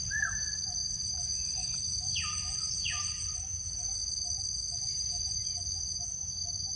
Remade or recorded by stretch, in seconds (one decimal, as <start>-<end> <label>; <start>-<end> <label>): 0.0-4.0 remade; 4.0-4.9 recorded; 4.9-6.8 remade